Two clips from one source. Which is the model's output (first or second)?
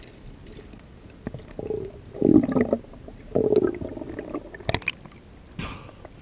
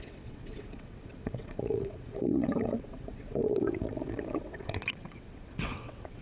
second